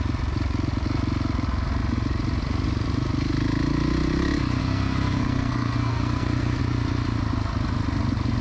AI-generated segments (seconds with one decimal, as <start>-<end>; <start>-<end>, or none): 4.6-6.6